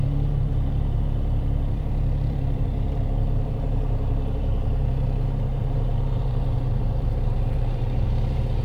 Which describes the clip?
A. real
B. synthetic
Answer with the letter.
B